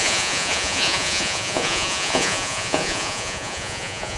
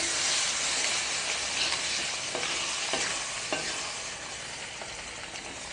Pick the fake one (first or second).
first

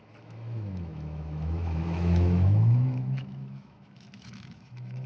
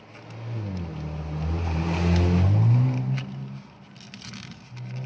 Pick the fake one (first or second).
first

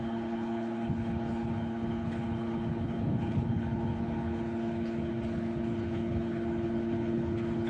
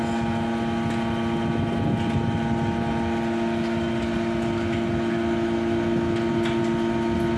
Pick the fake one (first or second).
first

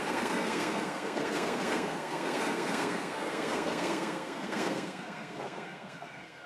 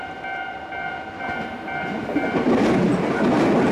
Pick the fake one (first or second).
first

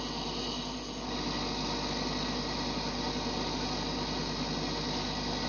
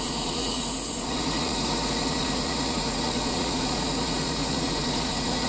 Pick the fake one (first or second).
second